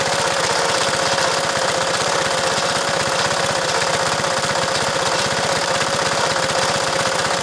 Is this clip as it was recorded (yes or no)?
no